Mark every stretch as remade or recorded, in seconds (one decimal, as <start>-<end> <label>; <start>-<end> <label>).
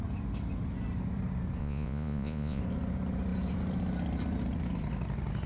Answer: 0.0-1.6 recorded; 1.6-2.6 remade; 2.6-5.5 recorded